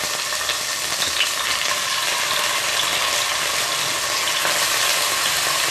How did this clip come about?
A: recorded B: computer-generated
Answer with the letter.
A